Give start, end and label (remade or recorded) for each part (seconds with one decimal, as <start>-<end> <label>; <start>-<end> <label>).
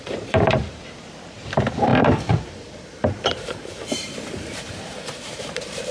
0.0-5.9 remade